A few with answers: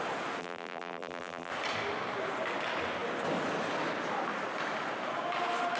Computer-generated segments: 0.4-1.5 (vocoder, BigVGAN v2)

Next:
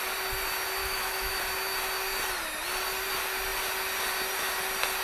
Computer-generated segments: 0.8-1.4 (autoencoder, DAC-VAE)

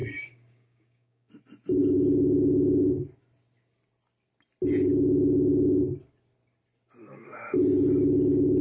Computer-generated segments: 0.0-1.3 (codec, DAC); 7.0-7.6

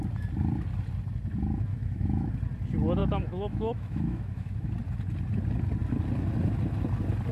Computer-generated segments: 1.7-2.3 (autoencoder, DAC-VAE); 3.0-4.7

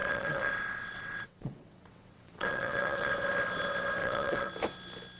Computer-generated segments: 0.0-3.1 (vocoder, WaveNeXt); 4.0-4.5

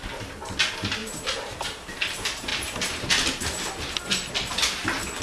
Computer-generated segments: 1.0-1.9 (vocoder, BigVGAN v2)